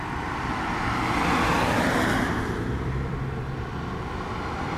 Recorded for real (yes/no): yes